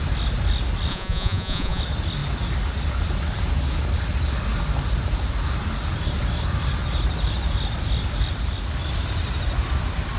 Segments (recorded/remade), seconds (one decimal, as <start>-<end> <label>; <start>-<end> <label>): 0.0-0.9 recorded; 0.9-1.8 remade; 1.8-10.2 recorded